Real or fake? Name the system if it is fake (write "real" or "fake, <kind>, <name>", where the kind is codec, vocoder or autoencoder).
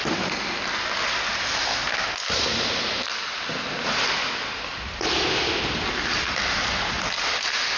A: real